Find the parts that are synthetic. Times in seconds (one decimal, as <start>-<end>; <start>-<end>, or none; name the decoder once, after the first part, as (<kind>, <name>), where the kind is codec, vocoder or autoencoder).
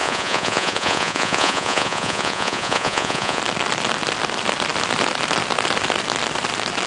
0.0-3.4 (vocoder, Vocos)